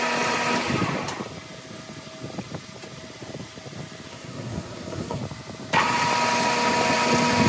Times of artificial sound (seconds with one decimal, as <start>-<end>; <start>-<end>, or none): 4.1-5.2